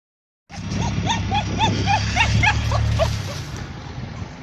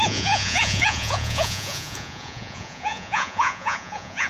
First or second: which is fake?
second